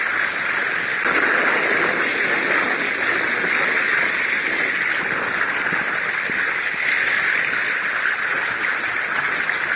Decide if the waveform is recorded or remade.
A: recorded